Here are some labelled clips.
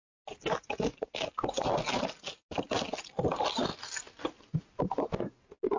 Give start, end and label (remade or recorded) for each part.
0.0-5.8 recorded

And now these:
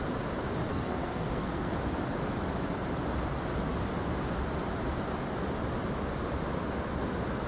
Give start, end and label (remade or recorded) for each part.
0.0-0.7 recorded; 0.7-1.7 remade; 1.7-7.5 recorded